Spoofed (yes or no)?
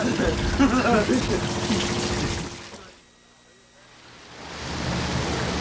no